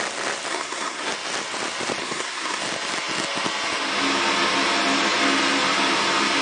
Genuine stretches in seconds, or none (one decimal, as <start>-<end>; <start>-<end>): 0.0-0.5; 1.1-2.0; 2.6-6.4